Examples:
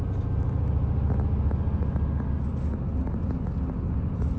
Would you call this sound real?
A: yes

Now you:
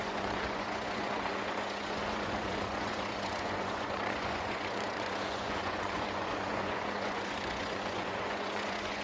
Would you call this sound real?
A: no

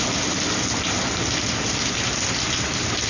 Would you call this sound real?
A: yes